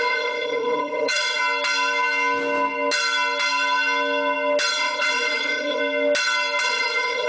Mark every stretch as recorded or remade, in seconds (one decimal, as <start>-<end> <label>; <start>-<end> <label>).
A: 0.0-1.4 remade; 1.4-4.7 recorded; 4.7-5.8 remade; 5.8-6.6 recorded; 6.6-7.3 remade